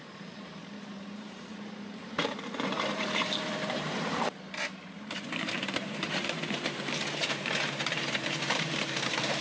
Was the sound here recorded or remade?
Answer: remade